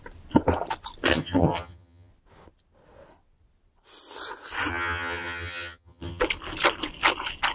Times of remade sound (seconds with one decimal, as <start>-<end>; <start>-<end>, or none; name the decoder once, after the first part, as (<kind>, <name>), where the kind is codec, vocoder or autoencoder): 1.1-2.1 (vocoder, HiFi-GAN); 4.7-6.2